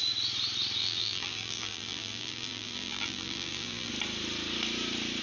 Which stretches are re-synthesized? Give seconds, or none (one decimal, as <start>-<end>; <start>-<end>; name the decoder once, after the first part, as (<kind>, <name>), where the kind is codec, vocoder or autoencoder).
0.8-3.9 (vocoder, BigVGAN v2)